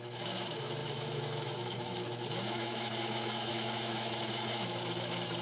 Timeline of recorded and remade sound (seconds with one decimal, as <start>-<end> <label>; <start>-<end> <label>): 0.0-5.4 remade